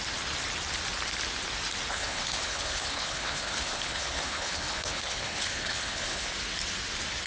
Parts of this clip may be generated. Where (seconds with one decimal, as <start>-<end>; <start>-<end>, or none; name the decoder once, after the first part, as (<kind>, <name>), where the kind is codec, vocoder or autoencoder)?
1.9-6.3 (codec, HILCodec)